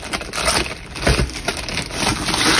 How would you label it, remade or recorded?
recorded